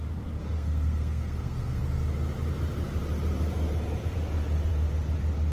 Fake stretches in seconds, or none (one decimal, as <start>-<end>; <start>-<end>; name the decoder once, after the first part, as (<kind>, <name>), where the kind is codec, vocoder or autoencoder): 0.4-1.8 (codec, SNAC)